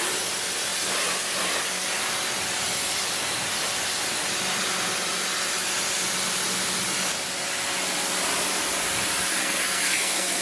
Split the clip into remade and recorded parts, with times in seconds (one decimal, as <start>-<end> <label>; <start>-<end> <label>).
0.0-9.4 recorded; 9.4-10.4 remade